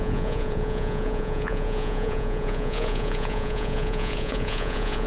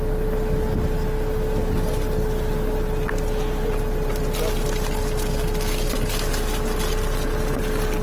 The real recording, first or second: second